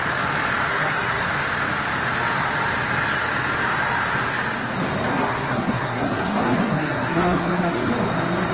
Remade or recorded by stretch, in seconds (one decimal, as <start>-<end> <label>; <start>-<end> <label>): 0.0-0.7 recorded; 0.7-1.3 remade; 1.3-5.1 recorded; 5.1-7.9 remade; 7.9-8.5 recorded